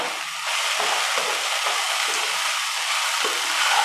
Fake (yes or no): no